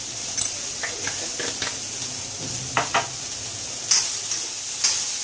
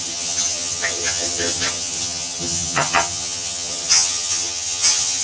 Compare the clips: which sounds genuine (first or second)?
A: first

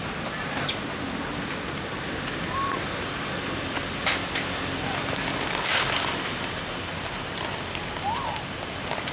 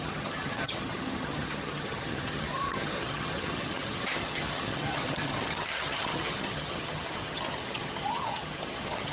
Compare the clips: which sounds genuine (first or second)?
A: first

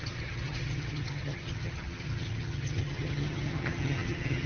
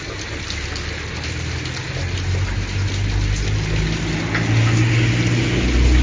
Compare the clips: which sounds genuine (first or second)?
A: second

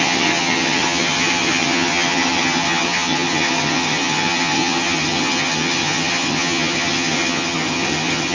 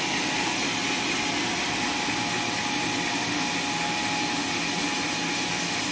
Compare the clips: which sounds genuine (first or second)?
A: second